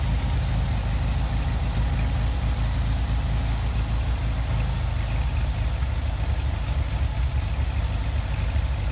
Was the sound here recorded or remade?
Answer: recorded